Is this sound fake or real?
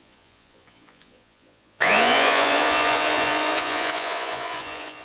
fake